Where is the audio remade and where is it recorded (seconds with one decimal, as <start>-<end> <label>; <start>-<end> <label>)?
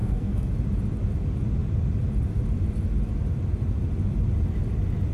0.0-0.5 remade; 0.5-5.1 recorded